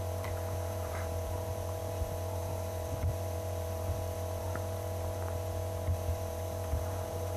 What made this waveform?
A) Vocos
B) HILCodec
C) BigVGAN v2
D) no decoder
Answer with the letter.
C